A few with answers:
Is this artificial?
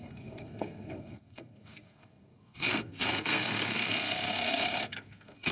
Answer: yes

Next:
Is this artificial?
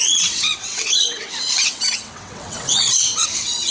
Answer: yes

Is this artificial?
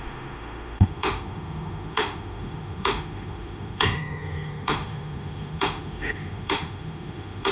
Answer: yes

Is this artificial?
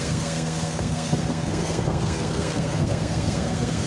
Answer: yes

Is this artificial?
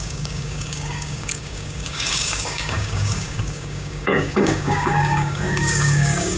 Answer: yes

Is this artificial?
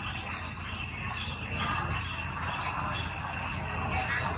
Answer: no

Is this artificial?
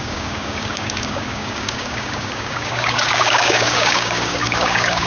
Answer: yes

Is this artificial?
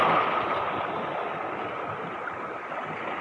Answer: no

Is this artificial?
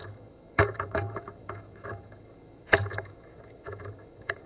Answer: yes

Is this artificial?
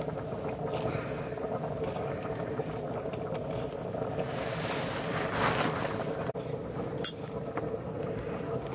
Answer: no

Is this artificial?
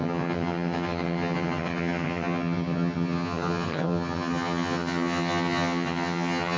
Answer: yes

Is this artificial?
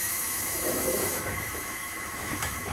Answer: yes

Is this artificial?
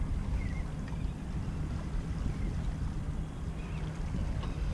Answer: no